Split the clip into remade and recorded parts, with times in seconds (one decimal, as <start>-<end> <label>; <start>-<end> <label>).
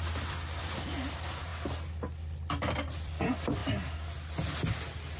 0.0-1.5 remade; 1.5-2.6 recorded; 2.6-3.6 remade; 3.6-5.2 recorded